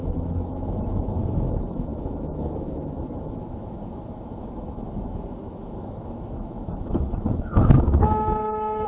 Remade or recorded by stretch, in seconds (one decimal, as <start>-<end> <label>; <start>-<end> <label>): 0.0-8.9 remade